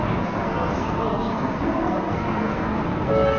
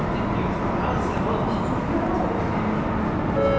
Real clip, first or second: second